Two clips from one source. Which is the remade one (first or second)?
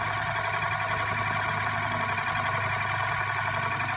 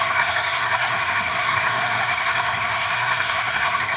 second